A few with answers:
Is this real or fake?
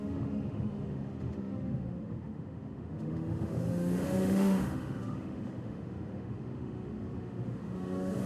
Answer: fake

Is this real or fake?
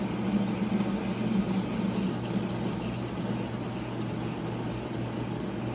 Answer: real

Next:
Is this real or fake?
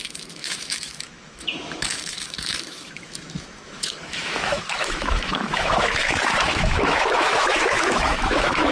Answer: fake